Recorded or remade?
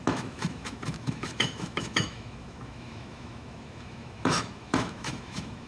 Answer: remade